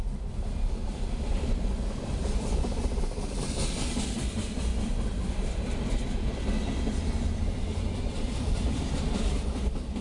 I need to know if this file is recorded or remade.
remade